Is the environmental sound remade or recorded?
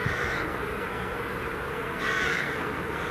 remade